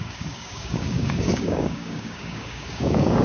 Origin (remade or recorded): remade